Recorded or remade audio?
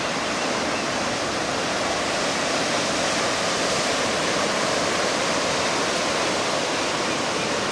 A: recorded